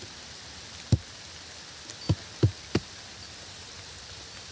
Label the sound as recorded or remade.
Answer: recorded